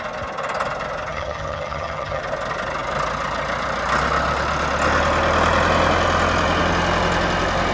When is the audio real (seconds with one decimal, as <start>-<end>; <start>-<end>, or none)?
0.0-1.1; 2.2-7.7